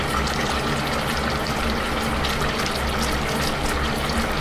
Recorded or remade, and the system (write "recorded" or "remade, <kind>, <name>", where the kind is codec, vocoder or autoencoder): recorded